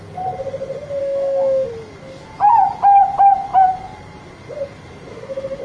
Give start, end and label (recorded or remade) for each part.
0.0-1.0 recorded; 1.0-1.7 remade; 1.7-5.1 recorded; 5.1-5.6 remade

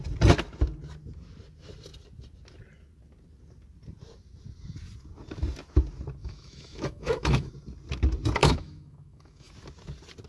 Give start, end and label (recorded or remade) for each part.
0.0-6.2 recorded; 6.2-7.5 remade; 7.5-8.4 recorded; 8.4-9.5 remade; 9.5-10.3 recorded

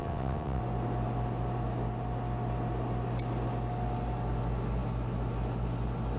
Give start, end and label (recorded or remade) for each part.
0.0-0.6 remade; 0.6-6.2 recorded

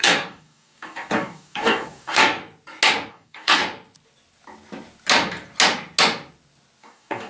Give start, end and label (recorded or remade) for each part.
0.0-2.4 remade; 2.4-3.1 recorded; 3.1-3.6 remade; 3.6-6.8 recorded; 6.8-7.3 remade

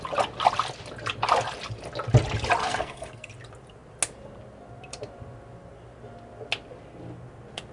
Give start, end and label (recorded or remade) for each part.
0.0-2.6 recorded; 2.6-3.3 remade; 3.3-7.7 recorded

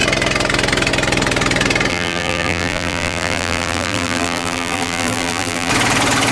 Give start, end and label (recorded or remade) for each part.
0.0-1.9 recorded; 1.9-5.7 remade; 5.7-6.3 recorded